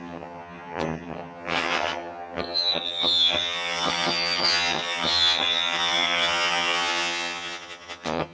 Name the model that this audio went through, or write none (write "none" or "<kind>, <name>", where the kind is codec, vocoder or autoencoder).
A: vocoder, HiFi-GAN